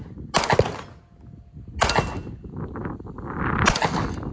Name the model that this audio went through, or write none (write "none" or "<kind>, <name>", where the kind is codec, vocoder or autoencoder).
none